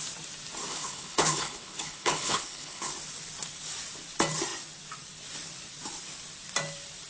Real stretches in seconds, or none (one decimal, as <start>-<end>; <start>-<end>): 0.0-0.7; 2.9-7.1